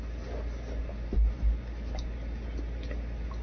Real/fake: real